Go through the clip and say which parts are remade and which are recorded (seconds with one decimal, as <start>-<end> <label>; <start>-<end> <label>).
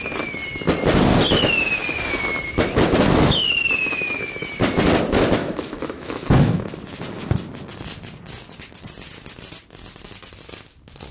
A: 0.0-5.4 recorded; 5.4-6.7 remade; 6.7-11.1 recorded